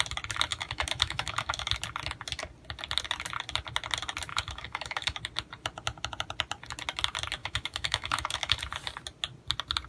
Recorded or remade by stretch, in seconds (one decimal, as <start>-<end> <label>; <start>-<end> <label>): 0.0-0.5 recorded; 0.5-1.7 remade; 1.7-4.3 recorded; 4.3-5.2 remade; 5.2-7.4 recorded; 7.4-8.6 remade; 8.6-9.9 recorded